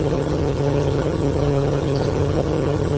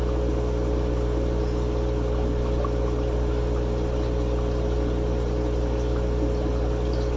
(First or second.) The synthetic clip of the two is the first